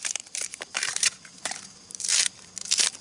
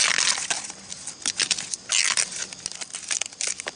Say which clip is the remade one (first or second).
first